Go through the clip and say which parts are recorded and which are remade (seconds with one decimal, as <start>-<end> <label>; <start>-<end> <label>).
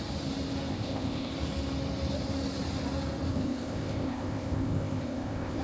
0.0-0.7 recorded; 0.7-1.3 remade; 1.3-3.3 recorded; 3.3-5.6 remade